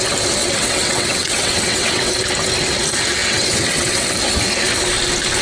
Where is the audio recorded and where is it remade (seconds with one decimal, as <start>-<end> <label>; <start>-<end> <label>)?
0.0-0.4 recorded; 0.4-2.1 remade; 2.1-3.2 recorded; 3.2-4.1 remade; 4.1-5.4 recorded